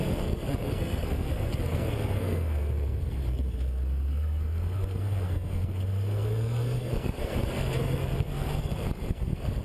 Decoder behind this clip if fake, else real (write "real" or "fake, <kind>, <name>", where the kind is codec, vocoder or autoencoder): fake, codec, SNAC